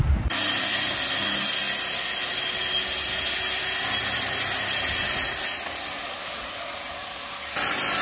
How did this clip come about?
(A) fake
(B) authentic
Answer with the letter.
B